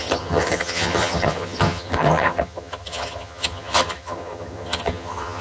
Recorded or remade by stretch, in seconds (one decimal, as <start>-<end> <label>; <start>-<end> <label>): 0.0-5.4 remade